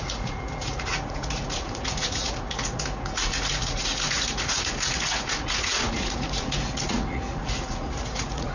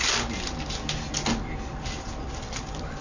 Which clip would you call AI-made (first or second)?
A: first